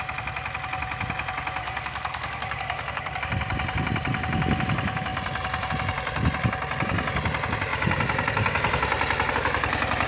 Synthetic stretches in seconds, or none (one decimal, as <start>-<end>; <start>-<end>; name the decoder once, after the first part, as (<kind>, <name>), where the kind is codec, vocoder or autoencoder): 1.6-3.2 (codec, SNAC)